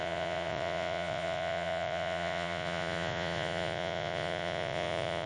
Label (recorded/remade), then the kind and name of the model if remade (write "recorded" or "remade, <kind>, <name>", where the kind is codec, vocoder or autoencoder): remade, vocoder, Vocos